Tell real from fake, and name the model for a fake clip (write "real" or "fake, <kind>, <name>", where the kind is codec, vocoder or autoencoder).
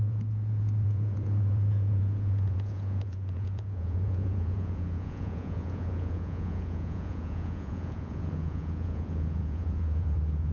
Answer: fake, vocoder, Vocos